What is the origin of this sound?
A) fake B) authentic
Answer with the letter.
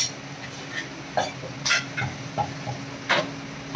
B